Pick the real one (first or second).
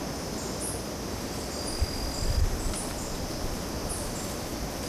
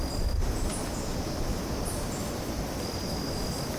second